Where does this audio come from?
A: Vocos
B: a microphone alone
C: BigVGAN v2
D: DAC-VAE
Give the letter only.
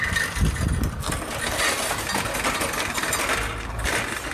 B